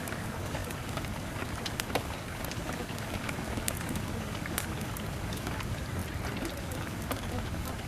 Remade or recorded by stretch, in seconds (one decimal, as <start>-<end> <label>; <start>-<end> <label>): 0.0-6.0 remade; 6.0-6.6 recorded; 6.6-7.9 remade